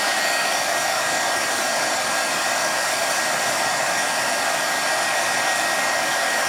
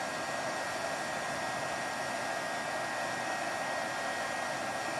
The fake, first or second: first